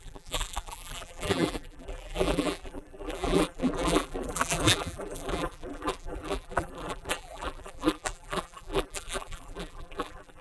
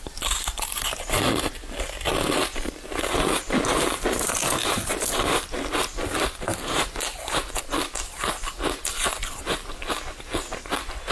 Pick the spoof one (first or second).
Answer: first